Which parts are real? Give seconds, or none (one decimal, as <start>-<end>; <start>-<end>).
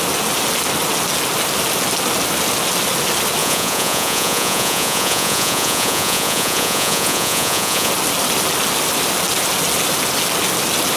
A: 0.0-3.4; 7.9-11.0